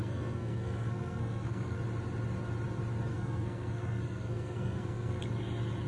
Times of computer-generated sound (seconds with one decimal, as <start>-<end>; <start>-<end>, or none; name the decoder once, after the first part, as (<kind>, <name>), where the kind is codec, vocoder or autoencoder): 0.0-1.8 (codec, SNAC); 3.1-5.2